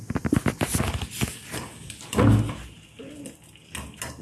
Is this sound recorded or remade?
recorded